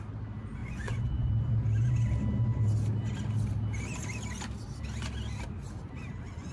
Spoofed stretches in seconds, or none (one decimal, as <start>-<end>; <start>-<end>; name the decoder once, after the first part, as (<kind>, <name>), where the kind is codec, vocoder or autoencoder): 0.6-1.3 (vocoder, Vocos)